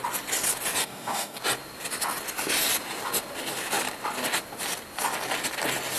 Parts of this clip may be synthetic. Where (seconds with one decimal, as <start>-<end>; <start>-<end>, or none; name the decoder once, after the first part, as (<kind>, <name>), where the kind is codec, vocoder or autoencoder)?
0.8-1.4 (codec, DAC)

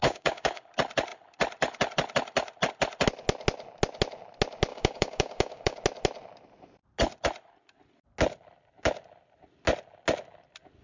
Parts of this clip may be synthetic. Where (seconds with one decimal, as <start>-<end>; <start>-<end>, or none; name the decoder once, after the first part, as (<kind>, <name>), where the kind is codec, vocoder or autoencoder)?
0.0-0.7 (codec, DAC); 4.7-5.8

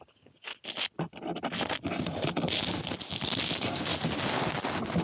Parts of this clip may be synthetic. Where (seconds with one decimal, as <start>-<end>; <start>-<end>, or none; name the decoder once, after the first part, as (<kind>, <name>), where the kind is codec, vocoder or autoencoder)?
0.0-0.5 (codec, DAC); 3.5-3.9

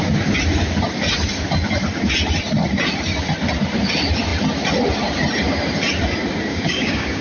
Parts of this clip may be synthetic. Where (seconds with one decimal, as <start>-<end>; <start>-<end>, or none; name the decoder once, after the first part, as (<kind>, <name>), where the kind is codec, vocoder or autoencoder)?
6.5-7.2 (codec, DAC)